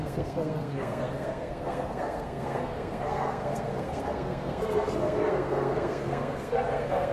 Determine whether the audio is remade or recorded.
remade